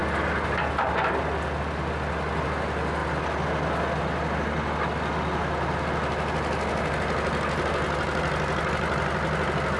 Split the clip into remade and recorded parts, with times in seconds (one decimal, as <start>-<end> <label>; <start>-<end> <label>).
0.0-9.8 recorded